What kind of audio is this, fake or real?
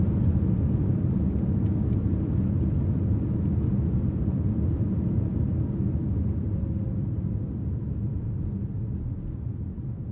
real